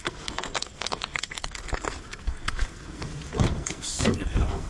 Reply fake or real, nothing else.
fake